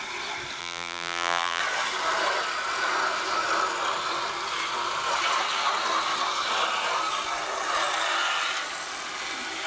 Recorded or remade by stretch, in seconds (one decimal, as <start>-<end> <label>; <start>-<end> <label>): 0.0-0.6 recorded; 0.6-1.6 remade; 1.6-9.7 recorded